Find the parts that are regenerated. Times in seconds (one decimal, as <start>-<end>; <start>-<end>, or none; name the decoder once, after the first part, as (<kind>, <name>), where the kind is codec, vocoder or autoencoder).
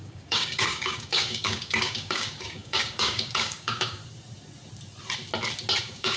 0.0-4.0 (codec, DAC); 5.8-6.2